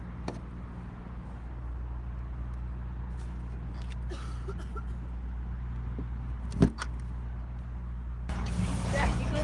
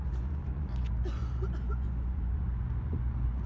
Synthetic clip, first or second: second